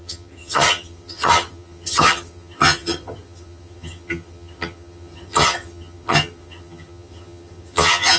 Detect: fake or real fake